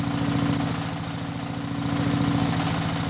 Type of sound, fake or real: real